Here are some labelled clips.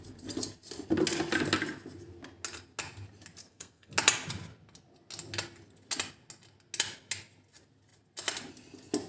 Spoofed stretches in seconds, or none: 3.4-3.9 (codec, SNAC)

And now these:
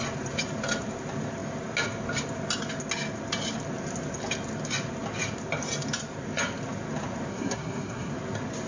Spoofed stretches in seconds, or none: 7.3-8.1 (codec, SNAC)

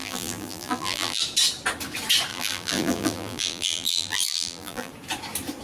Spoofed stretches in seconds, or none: 0.0-1.2 (vocoder, BigVGAN v2); 2.3-4.9

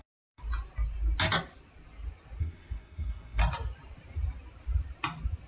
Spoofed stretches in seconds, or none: 0.0-0.4 (codec, SNAC); 2.4-3.4

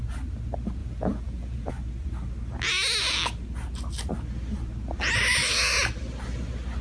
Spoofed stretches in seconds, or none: 0.8-1.7 (vocoder, Vocos)

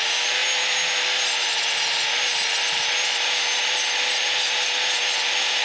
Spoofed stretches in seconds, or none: none

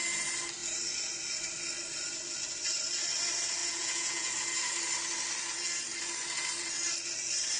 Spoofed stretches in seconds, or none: 3.6-4.3 (vocoder, Vocos)